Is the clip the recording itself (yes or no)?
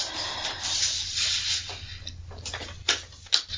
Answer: yes